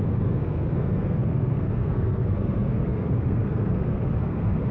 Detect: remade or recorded remade